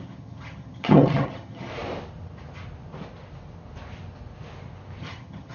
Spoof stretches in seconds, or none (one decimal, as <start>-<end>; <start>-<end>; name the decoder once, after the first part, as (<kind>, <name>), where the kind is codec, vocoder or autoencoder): 0.0-1.7 (vocoder, HiFi-GAN); 5.0-5.5